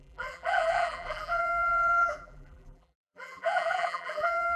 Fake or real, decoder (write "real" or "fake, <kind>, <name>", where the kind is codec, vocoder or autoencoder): fake, vocoder, BigVGAN v2